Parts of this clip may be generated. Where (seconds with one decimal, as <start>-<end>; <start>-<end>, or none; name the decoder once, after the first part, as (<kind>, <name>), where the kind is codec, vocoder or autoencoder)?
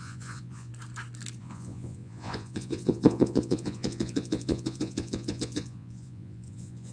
0.0-0.7 (vocoder, Vocos); 1.4-6.9